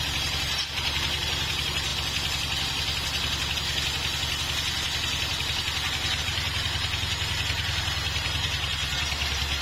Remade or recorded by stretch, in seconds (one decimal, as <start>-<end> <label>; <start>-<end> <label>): 0.0-1.9 remade; 1.9-6.2 recorded; 6.2-9.6 remade